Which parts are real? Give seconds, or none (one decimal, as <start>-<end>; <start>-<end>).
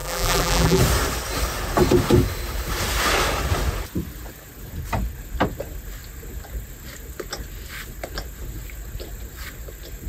0.8-10.1